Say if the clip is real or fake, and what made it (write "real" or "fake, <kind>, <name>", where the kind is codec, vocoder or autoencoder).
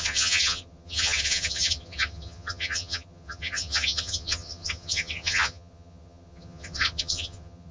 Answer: fake, vocoder, HiFi-GAN